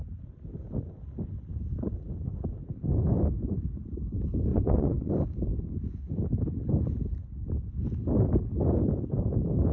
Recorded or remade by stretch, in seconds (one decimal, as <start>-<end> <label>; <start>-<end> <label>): 0.0-4.5 recorded; 4.5-5.1 remade; 5.1-9.7 recorded